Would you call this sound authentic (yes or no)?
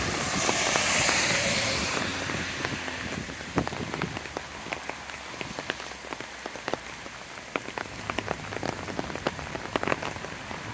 yes